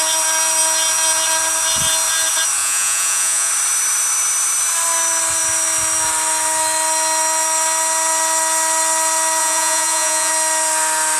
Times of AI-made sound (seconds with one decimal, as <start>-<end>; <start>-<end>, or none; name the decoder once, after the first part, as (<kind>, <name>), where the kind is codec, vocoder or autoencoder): 2.6-3.5 (vocoder, Vocos); 9.4-10.3